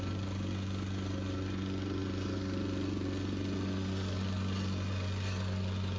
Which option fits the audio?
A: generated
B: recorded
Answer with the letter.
B